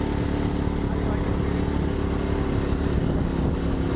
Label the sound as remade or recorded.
recorded